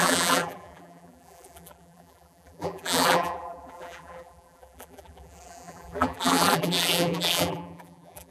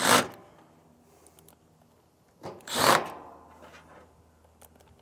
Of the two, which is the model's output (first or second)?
first